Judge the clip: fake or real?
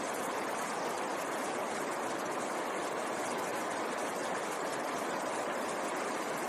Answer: real